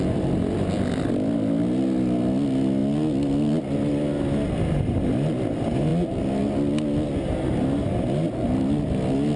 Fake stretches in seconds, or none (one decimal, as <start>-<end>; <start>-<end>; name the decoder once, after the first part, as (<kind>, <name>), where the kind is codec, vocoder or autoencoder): none